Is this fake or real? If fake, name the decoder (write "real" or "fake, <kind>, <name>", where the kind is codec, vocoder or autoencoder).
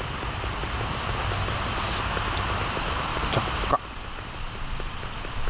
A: real